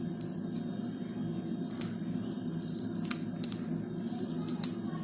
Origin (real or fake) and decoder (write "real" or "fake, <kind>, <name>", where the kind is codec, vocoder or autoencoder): real